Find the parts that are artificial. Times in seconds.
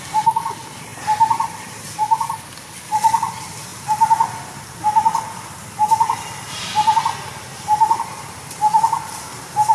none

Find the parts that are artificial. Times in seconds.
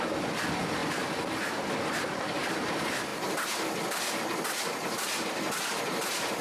none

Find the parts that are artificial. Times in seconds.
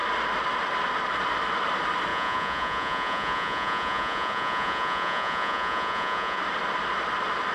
2.1-6.4 (vocoder, Vocos)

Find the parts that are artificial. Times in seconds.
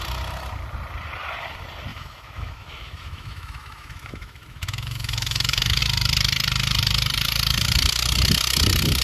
1.9-5.8 (autoencoder, DAC-VAE)